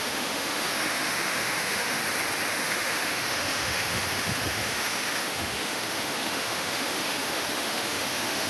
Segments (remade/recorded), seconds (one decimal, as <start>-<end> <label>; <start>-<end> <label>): 0.0-2.0 remade; 2.0-2.5 recorded; 2.5-8.5 remade